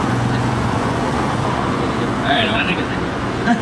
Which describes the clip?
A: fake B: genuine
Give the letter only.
A